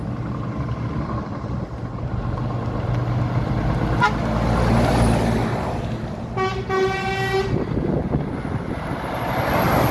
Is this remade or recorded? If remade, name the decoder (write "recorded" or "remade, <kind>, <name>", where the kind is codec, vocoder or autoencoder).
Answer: recorded